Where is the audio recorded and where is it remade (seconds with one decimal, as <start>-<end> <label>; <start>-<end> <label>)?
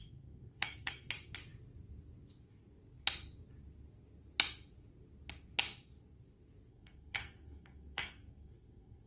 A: 0.0-1.1 remade; 1.1-6.7 recorded; 6.7-9.1 remade